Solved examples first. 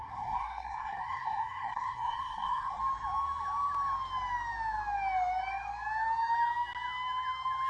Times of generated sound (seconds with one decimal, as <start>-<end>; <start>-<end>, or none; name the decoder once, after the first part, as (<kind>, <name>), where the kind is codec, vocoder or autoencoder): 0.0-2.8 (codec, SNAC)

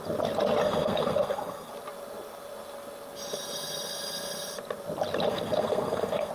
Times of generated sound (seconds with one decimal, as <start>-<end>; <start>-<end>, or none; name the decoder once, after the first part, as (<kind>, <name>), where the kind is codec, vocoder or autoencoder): 0.6-1.7 (codec, SNAC); 5.3-6.3

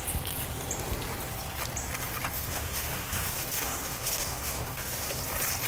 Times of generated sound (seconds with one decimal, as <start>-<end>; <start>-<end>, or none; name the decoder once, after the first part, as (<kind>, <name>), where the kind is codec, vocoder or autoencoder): 2.3-5.2 (codec, DAC)

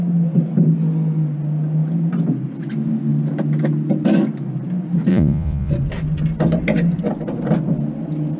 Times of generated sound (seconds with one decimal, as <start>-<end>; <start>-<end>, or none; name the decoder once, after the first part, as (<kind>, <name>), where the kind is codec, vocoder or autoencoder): 5.1-5.7 (vocoder, Vocos)